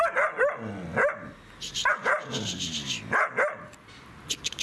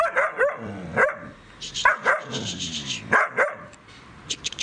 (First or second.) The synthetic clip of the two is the second